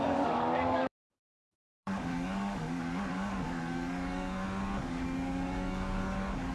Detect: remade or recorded remade